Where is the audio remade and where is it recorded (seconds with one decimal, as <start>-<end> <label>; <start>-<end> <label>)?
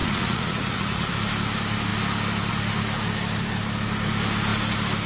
0.0-1.1 remade; 1.1-5.1 recorded